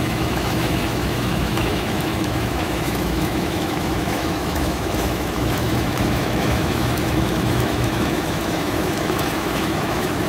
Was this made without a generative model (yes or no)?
no